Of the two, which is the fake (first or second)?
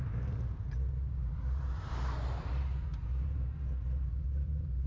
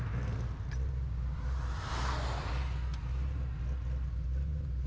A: first